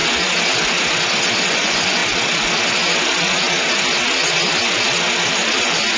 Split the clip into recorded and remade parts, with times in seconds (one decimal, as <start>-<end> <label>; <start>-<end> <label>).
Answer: 0.0-1.5 recorded; 1.5-2.0 remade; 2.0-5.6 recorded; 5.6-6.0 remade